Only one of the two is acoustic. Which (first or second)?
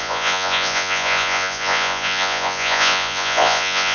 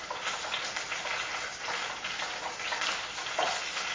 second